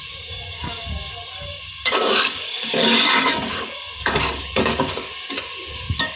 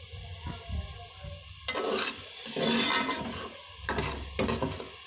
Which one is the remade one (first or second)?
first